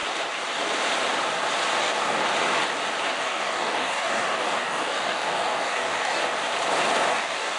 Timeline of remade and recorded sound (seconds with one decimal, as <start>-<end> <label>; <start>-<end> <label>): 0.0-1.8 recorded; 1.8-2.2 remade; 2.2-3.1 recorded; 3.1-6.2 remade; 6.2-7.1 recorded; 7.1-7.6 remade

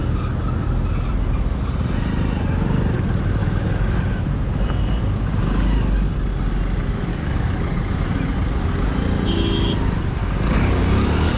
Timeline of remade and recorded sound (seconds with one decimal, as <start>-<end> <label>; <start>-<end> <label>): 0.0-3.4 recorded; 3.4-4.0 remade; 4.0-7.1 recorded; 7.1-7.8 remade; 7.8-10.2 recorded; 10.2-11.4 remade

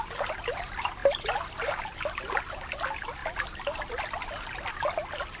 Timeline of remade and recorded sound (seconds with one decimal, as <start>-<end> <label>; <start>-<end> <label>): 0.0-5.4 recorded

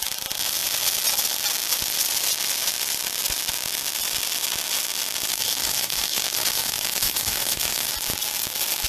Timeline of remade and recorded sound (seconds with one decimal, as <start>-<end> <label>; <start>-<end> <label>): 0.0-5.3 recorded; 5.3-7.9 remade; 7.9-8.9 recorded